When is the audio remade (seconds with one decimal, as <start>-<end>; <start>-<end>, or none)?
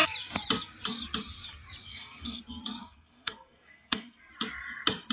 1.9-2.4; 2.8-4.3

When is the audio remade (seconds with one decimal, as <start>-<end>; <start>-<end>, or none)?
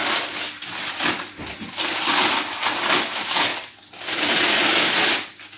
none